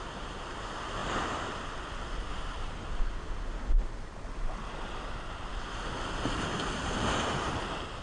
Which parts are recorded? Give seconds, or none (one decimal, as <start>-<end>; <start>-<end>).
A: 0.0-2.3; 3.0-8.0